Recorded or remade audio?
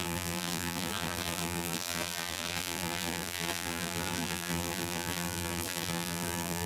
remade